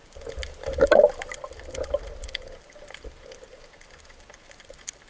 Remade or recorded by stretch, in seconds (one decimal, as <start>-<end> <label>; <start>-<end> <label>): 0.0-5.1 recorded